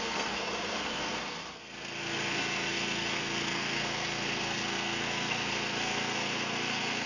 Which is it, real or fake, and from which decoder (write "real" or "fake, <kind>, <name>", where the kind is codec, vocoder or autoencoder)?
fake, codec, SNAC